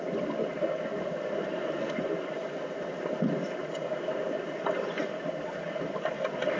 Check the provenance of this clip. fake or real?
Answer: real